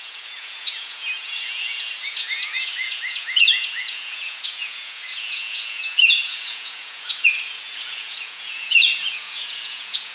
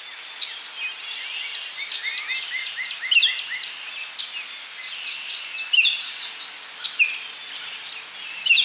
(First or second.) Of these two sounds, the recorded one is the second